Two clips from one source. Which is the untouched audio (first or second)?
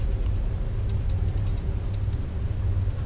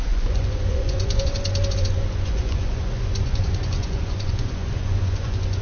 first